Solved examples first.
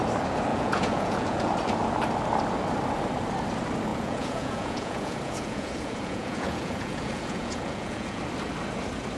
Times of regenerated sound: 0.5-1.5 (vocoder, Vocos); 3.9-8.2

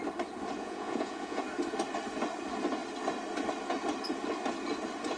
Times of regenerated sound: 0.6-1.4 (vocoder, Vocos)

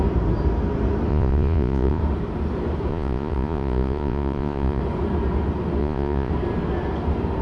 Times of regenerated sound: 1.1-2.0 (vocoder, Vocos); 2.9-4.8; 5.8-6.3

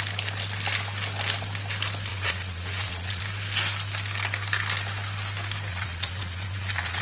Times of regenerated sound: 2.1-3.2 (vocoder, Vocos); 5.7-7.0